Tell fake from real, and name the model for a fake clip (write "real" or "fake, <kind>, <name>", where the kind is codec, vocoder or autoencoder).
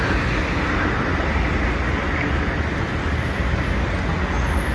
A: real